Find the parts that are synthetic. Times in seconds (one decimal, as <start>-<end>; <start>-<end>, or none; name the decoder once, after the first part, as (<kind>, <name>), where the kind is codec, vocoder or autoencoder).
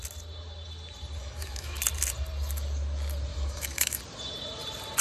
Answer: 1.2-1.8 (autoencoder, DAC-VAE); 3.3-4.0